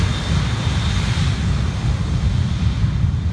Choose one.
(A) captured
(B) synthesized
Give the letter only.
A